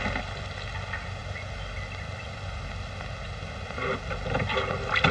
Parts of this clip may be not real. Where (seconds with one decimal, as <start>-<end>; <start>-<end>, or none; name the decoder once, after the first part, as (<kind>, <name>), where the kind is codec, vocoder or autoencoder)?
none